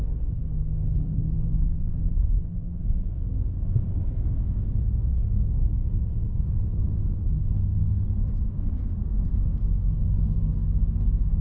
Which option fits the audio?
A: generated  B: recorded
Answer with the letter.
A